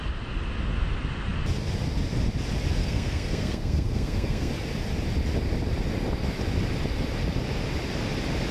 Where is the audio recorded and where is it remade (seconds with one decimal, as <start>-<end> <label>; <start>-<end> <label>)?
0.0-2.8 recorded; 2.8-4.5 remade; 4.5-8.5 recorded